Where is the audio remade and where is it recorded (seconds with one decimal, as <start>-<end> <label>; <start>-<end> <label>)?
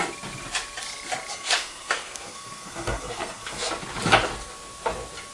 0.0-1.3 recorded; 1.3-3.7 remade; 3.7-5.3 recorded